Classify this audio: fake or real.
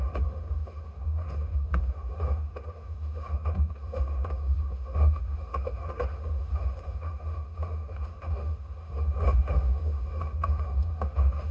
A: fake